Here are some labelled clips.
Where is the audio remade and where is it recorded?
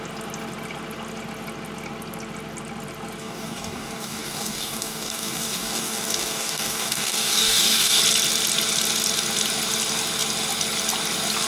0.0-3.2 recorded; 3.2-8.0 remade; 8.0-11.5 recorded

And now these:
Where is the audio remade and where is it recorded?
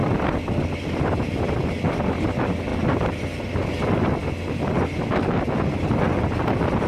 0.0-6.9 recorded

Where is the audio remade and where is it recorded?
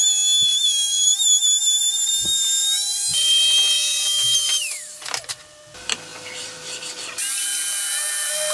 0.0-0.5 recorded; 0.5-5.6 remade; 5.6-6.1 recorded; 6.1-7.9 remade; 7.9-8.5 recorded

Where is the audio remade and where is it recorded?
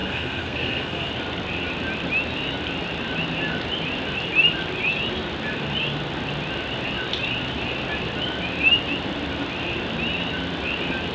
0.0-1.1 remade; 1.1-11.1 recorded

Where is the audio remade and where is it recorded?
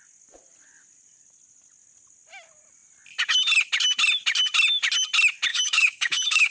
0.0-5.5 recorded; 5.5-6.5 remade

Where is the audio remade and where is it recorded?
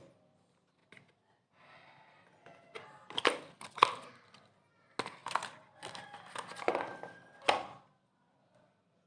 0.0-9.1 recorded